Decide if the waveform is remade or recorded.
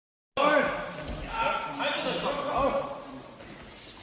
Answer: recorded